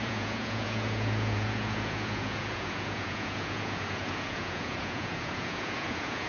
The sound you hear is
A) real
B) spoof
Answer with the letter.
B